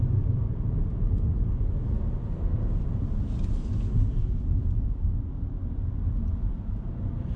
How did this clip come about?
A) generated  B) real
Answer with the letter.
B